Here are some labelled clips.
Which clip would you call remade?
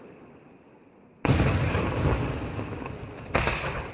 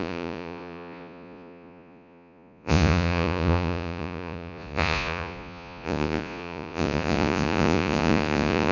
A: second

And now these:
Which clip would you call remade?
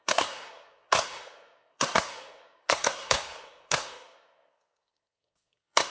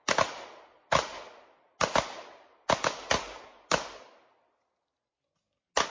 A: first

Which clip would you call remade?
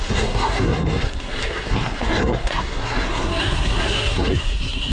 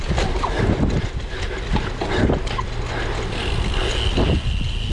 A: first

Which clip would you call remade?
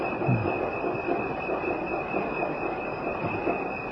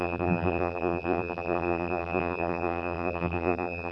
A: second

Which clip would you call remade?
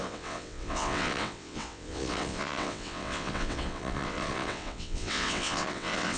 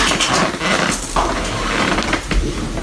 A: first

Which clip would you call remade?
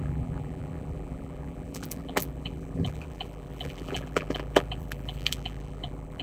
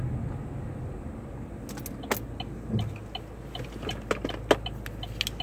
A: first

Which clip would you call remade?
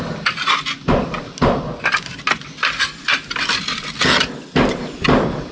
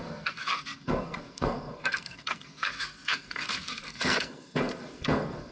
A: second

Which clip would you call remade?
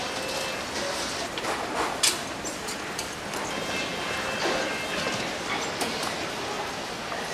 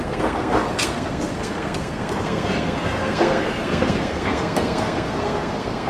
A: second